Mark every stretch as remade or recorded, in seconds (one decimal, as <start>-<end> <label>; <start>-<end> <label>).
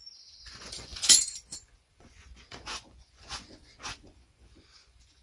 0.0-5.2 remade